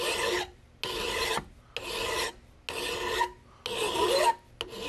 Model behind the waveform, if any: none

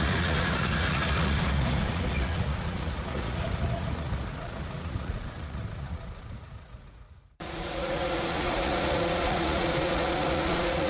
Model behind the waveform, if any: vocoder, Vocos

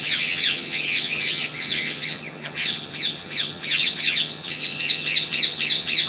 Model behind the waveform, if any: vocoder, HiFi-GAN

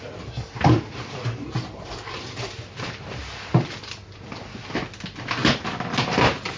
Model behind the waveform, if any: none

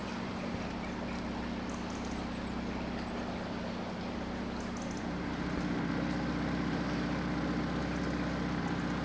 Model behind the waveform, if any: none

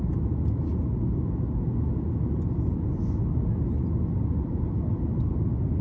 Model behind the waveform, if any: none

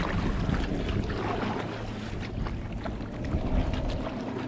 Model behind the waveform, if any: none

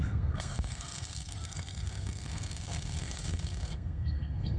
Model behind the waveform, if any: codec, SNAC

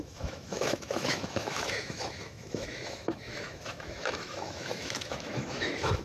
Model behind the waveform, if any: autoencoder, DAC-VAE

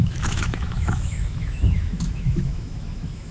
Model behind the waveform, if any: autoencoder, DAC-VAE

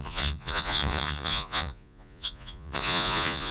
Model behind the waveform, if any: vocoder, Vocos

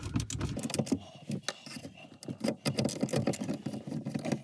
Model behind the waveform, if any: none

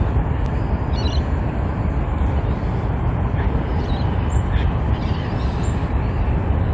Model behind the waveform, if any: none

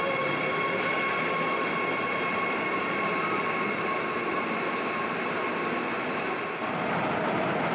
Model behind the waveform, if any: none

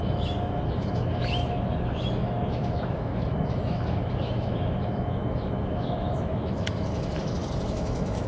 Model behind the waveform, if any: autoencoder, DAC-VAE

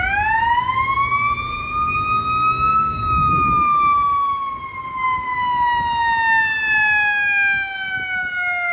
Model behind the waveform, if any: none